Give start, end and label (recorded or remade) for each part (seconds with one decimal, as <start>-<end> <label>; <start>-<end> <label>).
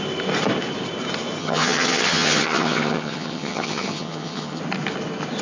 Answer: 0.0-1.4 recorded; 1.4-4.6 remade; 4.6-5.4 recorded